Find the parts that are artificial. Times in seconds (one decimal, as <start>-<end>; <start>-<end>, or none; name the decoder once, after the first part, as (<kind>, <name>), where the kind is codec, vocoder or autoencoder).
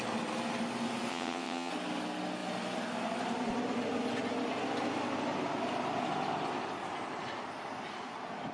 1.1-1.7 (vocoder, WaveNeXt)